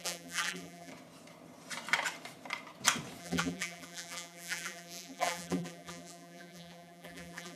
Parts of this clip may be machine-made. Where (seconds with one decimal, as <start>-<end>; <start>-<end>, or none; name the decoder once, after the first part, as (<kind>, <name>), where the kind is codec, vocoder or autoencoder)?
0.0-0.9 (vocoder, BigVGAN v2); 3.2-7.6